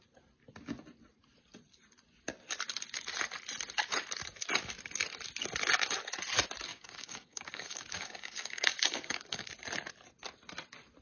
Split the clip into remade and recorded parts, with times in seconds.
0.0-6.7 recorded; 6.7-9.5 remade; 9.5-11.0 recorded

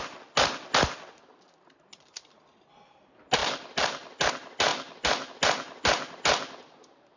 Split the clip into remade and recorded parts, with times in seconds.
0.0-7.2 recorded

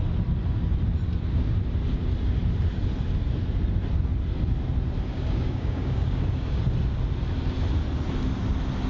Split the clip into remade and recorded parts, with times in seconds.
0.0-5.1 recorded; 5.1-6.6 remade; 6.6-8.9 recorded

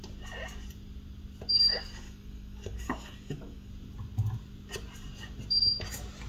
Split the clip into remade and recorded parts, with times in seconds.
0.0-1.7 recorded; 1.7-3.7 remade; 3.7-6.3 recorded